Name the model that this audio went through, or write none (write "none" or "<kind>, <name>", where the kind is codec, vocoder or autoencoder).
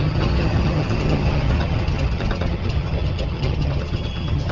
vocoder, HiFi-GAN